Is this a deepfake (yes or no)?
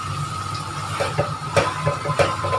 yes